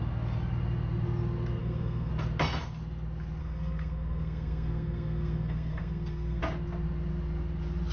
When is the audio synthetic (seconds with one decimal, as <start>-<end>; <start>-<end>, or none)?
1.6-2.1; 3.4-6.4